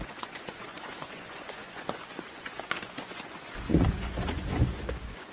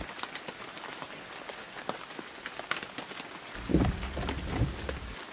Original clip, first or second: second